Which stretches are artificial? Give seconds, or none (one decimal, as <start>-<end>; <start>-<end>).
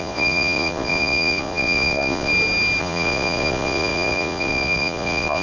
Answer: 0.0-2.3; 2.8-5.4